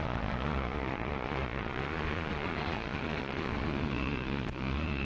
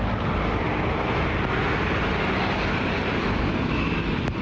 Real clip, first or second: second